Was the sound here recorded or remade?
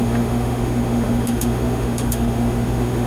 remade